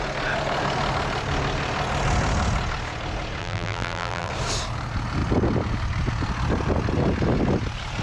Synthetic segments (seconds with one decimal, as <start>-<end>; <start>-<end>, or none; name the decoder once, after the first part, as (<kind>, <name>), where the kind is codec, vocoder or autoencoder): 3.4-4.3 (vocoder, BigVGAN v2)